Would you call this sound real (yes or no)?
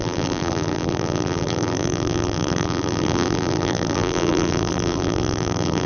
no